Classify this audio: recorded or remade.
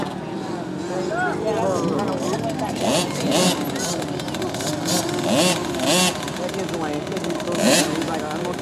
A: recorded